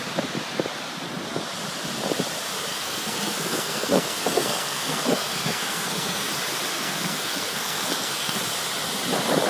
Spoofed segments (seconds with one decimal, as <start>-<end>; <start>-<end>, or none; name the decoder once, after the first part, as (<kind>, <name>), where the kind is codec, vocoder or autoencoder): 2.7-6.3 (codec, SNAC); 6.7-8.4